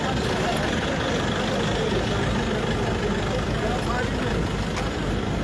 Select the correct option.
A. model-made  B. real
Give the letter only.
B